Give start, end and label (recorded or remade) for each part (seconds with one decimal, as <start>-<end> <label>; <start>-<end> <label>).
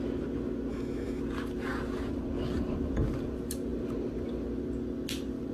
0.0-0.7 recorded; 0.7-1.2 remade; 1.2-5.5 recorded